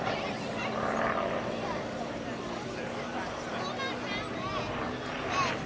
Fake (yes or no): no